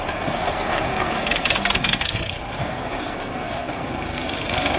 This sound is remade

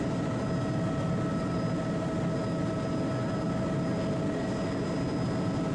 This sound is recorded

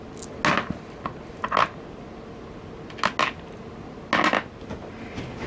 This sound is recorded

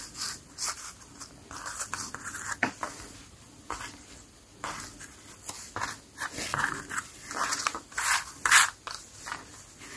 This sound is recorded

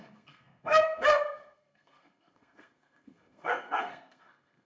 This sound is remade